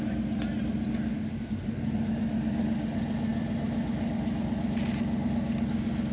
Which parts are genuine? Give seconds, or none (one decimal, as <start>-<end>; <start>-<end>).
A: 0.0-6.1